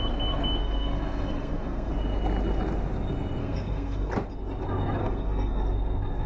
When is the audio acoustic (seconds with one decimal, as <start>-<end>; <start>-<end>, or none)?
0.0-0.6; 1.9-3.4; 4.1-5.0; 5.6-6.3